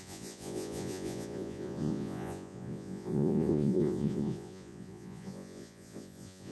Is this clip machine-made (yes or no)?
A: yes